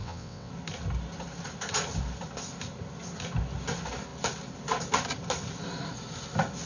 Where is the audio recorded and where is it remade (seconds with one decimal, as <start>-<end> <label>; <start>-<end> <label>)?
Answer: 0.0-0.5 remade; 0.5-6.7 recorded